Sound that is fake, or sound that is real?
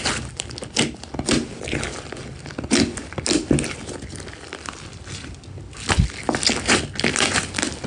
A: real